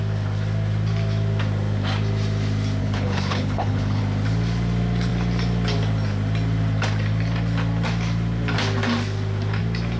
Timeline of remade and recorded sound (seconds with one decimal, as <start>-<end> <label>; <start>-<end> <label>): 0.0-2.8 recorded; 2.8-4.0 remade; 4.0-10.0 recorded